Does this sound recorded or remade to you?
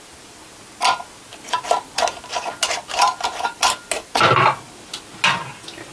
recorded